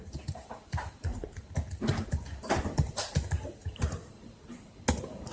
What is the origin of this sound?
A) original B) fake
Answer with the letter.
A